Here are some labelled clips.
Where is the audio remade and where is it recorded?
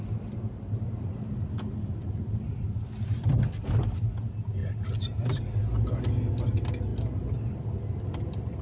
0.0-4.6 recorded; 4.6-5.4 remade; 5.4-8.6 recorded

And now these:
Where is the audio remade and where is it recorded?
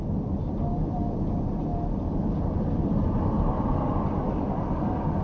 0.0-5.2 recorded